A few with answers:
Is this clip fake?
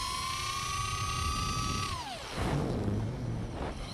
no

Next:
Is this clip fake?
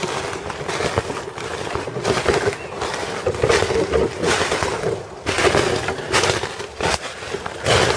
no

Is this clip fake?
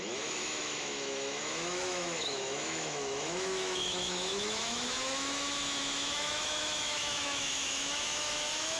yes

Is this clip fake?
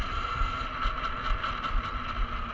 no